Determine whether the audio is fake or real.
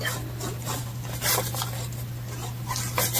real